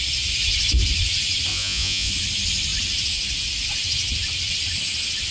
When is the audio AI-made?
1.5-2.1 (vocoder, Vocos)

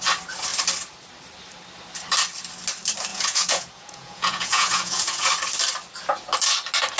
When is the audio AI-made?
3.1-5.3 (vocoder, Vocos)

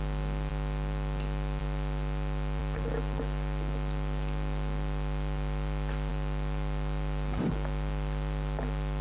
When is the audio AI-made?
none